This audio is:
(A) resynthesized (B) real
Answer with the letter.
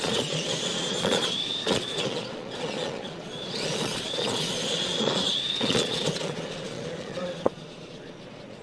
A